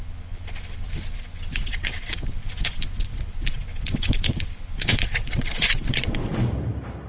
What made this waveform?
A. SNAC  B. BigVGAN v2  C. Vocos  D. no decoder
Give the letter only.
C